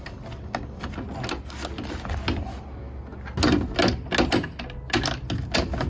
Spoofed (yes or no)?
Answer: no